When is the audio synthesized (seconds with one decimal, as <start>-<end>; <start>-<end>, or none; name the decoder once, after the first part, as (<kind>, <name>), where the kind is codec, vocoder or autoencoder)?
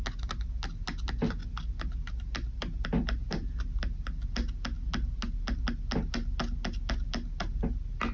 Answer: none